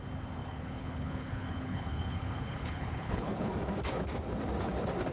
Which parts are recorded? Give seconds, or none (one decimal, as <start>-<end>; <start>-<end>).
0.0-0.4; 3.5-5.1